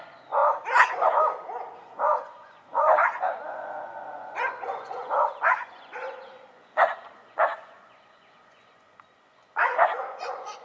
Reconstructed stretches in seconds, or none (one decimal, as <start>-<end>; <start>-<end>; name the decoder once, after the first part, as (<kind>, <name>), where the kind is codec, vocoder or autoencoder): 0.0-0.4 (vocoder, Vocos); 1.8-10.6